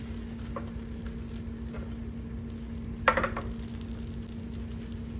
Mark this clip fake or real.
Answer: real